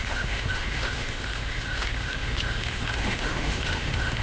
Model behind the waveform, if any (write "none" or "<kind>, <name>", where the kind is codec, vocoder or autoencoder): autoencoder, DAC-VAE